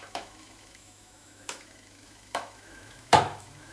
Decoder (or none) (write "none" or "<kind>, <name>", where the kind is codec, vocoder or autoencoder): autoencoder, DAC-VAE